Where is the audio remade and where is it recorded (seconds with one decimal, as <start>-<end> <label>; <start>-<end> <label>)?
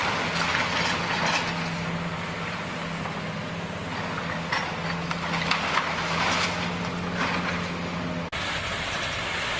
0.0-9.6 recorded